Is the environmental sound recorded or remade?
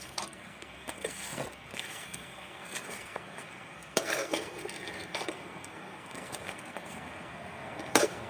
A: remade